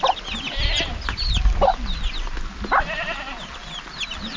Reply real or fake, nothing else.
real